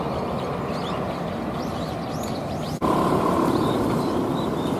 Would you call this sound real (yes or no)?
no